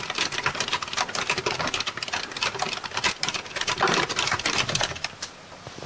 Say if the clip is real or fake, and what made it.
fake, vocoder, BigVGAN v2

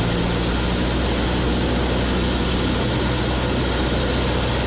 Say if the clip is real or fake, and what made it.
real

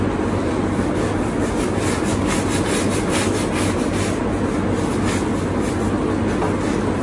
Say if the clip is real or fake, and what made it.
real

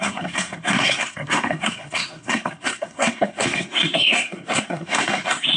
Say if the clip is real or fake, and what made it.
fake, codec, SNAC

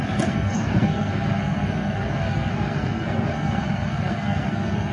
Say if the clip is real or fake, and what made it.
fake, codec, SNAC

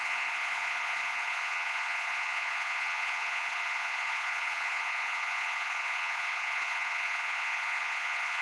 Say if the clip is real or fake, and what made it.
fake, vocoder, Vocos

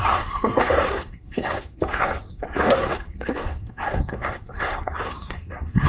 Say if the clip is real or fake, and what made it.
fake, codec, SNAC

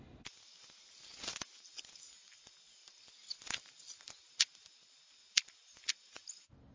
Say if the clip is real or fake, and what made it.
real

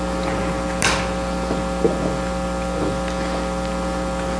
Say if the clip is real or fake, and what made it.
real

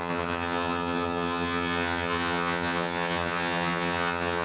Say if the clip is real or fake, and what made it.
fake, vocoder, HiFi-GAN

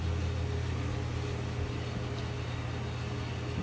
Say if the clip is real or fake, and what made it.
real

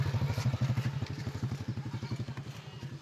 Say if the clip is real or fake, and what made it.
real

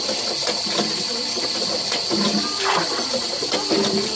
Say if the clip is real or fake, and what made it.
real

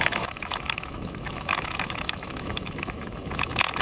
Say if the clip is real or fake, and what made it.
fake, autoencoder, DAC-VAE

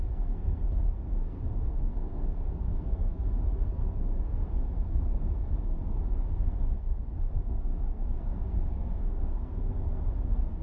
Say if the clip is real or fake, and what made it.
fake, codec, SNAC